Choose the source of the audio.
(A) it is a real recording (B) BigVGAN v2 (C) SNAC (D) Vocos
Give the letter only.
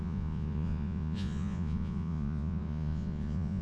D